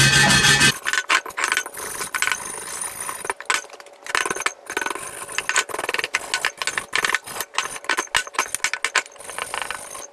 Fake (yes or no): no